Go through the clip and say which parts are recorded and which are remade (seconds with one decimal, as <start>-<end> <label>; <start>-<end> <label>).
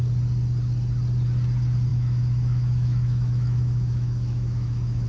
0.0-1.9 recorded; 1.9-5.1 remade